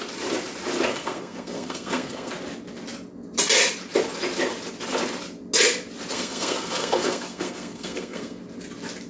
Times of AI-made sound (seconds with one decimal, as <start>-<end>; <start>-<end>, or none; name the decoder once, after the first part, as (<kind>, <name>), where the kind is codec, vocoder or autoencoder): 0.9-2.3 (codec, SNAC); 6.1-8.4